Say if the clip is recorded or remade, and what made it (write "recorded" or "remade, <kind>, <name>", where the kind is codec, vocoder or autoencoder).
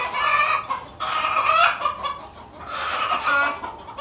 recorded